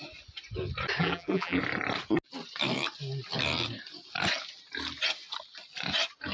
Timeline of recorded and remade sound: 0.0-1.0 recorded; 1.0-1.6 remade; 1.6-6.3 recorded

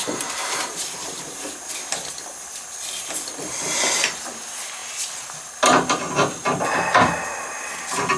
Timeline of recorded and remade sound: 0.0-0.4 recorded; 0.4-1.7 remade; 1.7-8.2 recorded

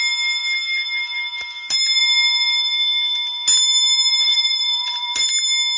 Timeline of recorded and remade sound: 0.0-4.3 recorded; 4.3-5.3 remade; 5.3-5.8 recorded

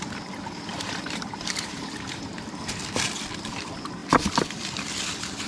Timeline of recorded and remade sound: 0.0-0.7 recorded; 0.7-2.3 remade; 2.3-5.5 recorded

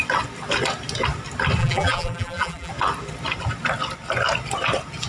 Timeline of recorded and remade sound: 0.0-1.6 recorded; 1.6-2.7 remade; 2.7-5.1 recorded

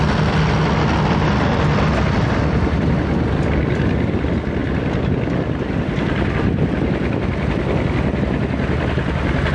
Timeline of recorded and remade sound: 0.0-4.6 recorded; 4.6-9.5 remade

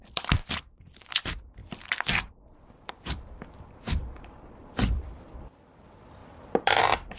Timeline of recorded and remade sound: 0.0-1.6 recorded; 1.6-2.3 remade; 2.3-4.6 recorded; 4.6-5.7 remade; 5.7-6.2 recorded; 6.2-6.8 remade; 6.8-7.2 recorded